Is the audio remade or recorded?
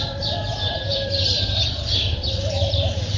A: remade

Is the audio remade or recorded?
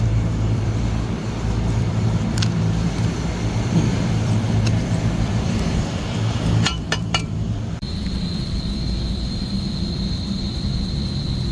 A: remade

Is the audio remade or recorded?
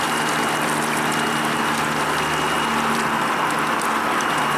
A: recorded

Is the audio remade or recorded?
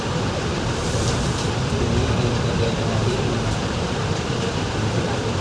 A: remade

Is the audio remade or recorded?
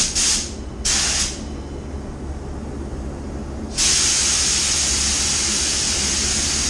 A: recorded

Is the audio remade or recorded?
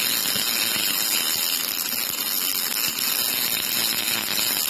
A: recorded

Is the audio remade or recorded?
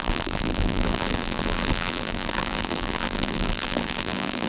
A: remade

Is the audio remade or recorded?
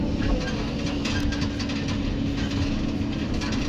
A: recorded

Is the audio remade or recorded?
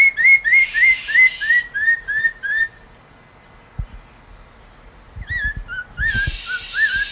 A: recorded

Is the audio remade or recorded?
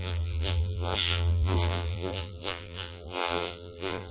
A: remade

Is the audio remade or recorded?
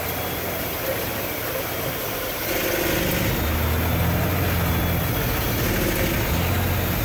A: recorded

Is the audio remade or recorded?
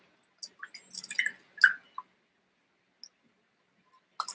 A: recorded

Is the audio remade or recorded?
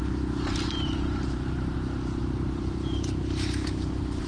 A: remade